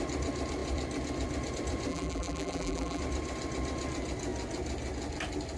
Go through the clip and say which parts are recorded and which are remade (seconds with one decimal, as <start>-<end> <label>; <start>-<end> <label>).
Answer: 0.0-1.9 recorded; 1.9-3.0 remade; 3.0-5.6 recorded